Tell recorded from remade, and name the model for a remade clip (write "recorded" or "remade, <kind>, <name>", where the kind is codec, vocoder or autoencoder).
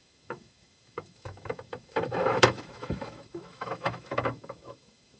remade, autoencoder, DAC-VAE